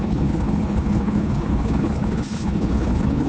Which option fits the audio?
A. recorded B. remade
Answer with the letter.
B